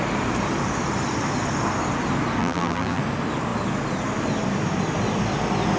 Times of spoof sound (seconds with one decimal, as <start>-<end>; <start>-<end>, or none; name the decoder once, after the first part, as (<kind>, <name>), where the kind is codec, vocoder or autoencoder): 2.4-3.0 (vocoder, BigVGAN v2)

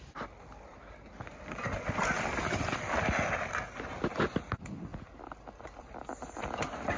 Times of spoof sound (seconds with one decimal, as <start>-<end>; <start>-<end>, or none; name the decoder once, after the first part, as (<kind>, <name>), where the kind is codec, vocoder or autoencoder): none

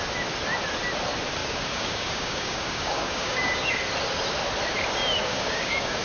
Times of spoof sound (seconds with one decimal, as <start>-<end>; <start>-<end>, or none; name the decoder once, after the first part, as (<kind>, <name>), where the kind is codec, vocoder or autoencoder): 1.4-3.7 (codec, DAC); 5.2-6.0

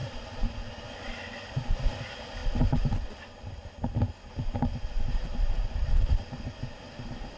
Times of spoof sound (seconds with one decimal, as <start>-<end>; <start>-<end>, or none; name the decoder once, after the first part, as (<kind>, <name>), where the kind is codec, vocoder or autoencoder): none

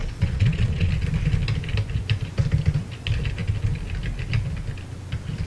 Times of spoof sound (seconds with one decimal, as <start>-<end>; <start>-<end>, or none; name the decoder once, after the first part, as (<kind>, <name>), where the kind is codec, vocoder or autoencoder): 0.0-0.9 (vocoder, Vocos)

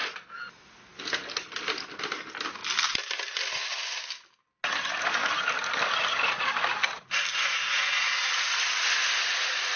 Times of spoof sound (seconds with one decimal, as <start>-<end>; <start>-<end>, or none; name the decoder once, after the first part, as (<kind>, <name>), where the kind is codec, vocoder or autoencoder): none

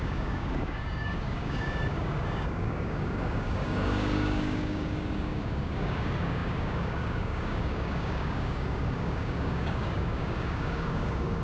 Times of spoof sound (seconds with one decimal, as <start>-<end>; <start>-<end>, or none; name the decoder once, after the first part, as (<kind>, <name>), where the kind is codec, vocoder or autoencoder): 0.0-11.4 (codec, DAC)